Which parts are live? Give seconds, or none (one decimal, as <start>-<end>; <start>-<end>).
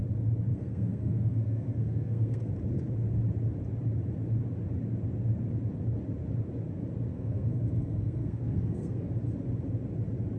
0.0-0.5; 2.5-7.1; 9.1-10.4